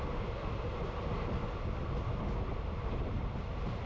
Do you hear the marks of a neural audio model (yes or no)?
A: no